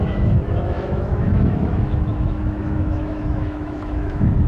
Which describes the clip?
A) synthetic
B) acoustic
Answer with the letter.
A